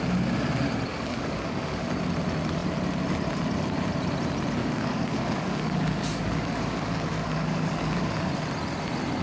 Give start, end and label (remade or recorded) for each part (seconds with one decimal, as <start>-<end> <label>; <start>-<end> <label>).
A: 0.0-0.9 recorded; 0.9-1.9 remade; 1.9-4.6 recorded; 4.6-8.3 remade; 8.3-9.2 recorded